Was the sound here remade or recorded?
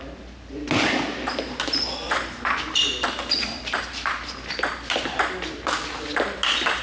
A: recorded